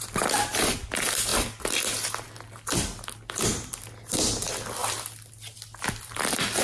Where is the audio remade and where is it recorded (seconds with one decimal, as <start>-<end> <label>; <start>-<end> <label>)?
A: 0.0-6.6 recorded